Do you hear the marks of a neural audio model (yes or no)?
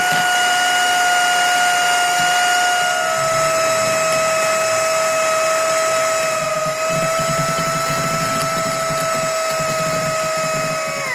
no